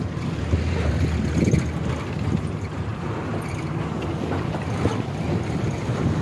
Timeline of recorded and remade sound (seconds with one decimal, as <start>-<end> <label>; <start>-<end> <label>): 0.0-4.9 recorded; 4.9-5.6 remade; 5.6-6.2 recorded

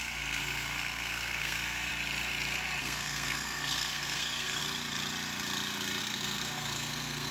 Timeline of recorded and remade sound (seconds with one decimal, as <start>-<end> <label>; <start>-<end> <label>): 0.0-1.9 remade; 1.9-2.8 recorded; 2.8-4.6 remade; 4.6-6.0 recorded; 6.0-7.3 remade

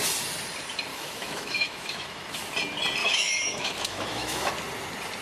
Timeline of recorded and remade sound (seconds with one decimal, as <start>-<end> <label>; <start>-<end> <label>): 0.0-0.9 recorded; 0.9-2.4 remade; 2.4-3.0 recorded; 3.0-4.5 remade; 4.5-5.2 recorded

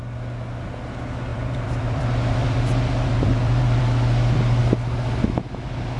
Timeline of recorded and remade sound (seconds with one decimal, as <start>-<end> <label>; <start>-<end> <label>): 0.0-1.3 recorded; 1.3-3.8 remade; 3.8-6.0 recorded

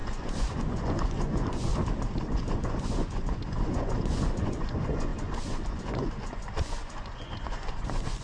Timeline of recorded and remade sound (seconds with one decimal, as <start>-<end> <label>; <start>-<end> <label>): 0.0-1.7 remade; 1.7-2.3 recorded; 2.3-8.2 remade

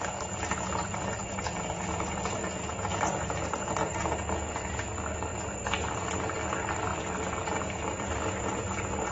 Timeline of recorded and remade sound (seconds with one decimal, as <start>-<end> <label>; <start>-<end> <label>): 0.0-2.9 recorded; 2.9-4.4 remade; 4.4-5.3 recorded; 5.3-6.1 remade; 6.1-6.9 recorded; 6.9-8.5 remade; 8.5-9.1 recorded

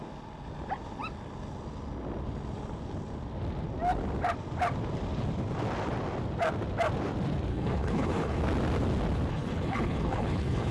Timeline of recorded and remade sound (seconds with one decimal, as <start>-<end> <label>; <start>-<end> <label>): 0.0-7.5 recorded; 7.5-8.4 remade; 8.4-9.3 recorded; 9.3-10.7 remade

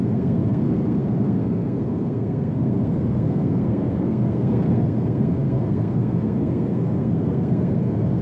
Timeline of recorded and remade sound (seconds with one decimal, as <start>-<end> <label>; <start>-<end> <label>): 0.0-8.2 remade